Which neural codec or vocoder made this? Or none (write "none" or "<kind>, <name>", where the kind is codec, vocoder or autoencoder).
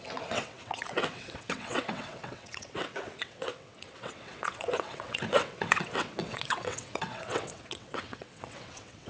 vocoder, WaveNeXt